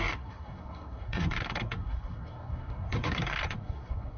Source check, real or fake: fake